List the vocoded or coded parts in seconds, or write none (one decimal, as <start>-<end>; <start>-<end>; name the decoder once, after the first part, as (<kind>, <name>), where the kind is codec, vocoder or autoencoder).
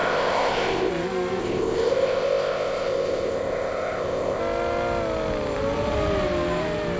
0.0-0.9 (codec, ZipCodec); 1.4-4.4